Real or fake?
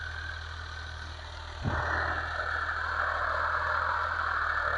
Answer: real